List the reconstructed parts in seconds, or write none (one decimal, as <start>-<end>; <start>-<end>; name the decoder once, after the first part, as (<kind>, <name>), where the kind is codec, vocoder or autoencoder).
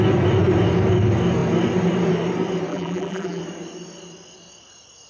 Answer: 2.7-3.4 (vocoder, BigVGAN v2)